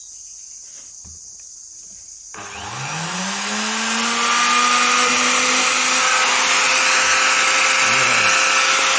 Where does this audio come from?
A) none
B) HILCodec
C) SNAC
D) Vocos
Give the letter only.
A